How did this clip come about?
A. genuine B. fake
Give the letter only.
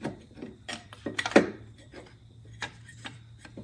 B